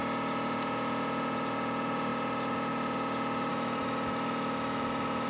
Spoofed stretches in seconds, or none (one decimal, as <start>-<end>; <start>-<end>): 3.5-5.3